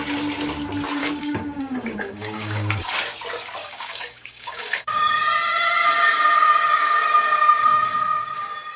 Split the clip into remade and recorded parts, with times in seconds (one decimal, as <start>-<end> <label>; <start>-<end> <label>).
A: 0.0-1.0 recorded; 1.0-2.9 remade; 2.9-3.6 recorded; 3.6-8.4 remade; 8.4-8.8 recorded